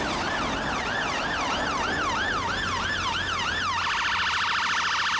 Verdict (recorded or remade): recorded